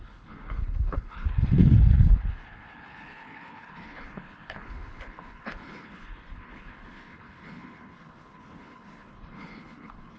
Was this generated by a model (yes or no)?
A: yes